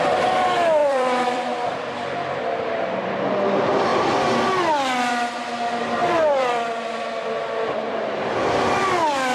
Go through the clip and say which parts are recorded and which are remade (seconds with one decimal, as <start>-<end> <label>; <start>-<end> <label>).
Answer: 0.0-0.8 recorded; 0.8-3.4 remade; 3.4-6.0 recorded; 6.0-7.2 remade; 7.2-9.3 recorded

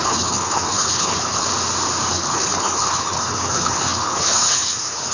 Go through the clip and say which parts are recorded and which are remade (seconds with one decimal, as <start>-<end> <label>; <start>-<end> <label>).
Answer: 0.0-1.5 remade; 1.5-2.1 recorded; 2.1-5.1 remade

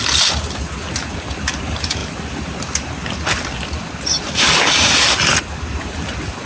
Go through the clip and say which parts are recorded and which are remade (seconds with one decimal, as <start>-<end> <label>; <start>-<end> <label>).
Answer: 0.0-6.5 recorded

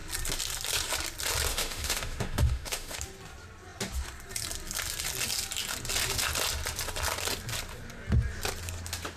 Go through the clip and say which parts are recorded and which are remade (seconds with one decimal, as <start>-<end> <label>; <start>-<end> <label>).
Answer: 0.0-1.5 recorded; 1.5-3.0 remade; 3.0-9.2 recorded

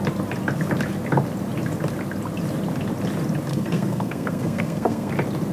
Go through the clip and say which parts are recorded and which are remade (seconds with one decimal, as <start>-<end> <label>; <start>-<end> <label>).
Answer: 0.0-3.5 recorded; 3.5-5.1 remade; 5.1-5.5 recorded

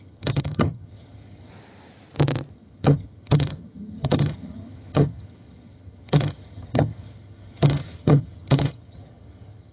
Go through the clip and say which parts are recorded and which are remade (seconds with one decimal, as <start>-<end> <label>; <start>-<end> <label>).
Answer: 0.0-1.5 remade; 1.5-2.5 recorded; 2.5-9.7 remade

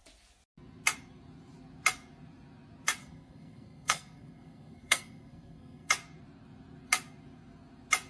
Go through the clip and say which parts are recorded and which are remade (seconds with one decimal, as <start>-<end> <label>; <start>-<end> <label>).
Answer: 0.0-3.0 recorded; 3.0-5.9 remade; 5.9-8.1 recorded